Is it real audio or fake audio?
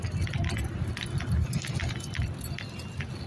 real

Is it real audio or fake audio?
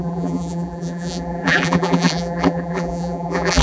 fake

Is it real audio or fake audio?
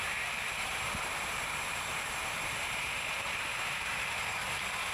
fake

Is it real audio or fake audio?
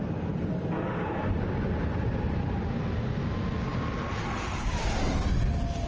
real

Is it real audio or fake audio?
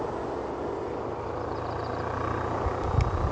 real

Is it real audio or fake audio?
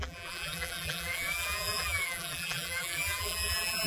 fake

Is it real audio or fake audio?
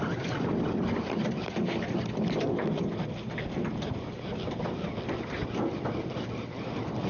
fake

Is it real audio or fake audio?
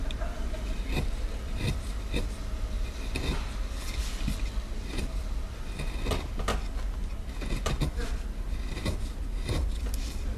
real